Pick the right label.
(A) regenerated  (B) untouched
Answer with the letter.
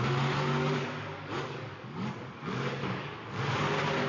A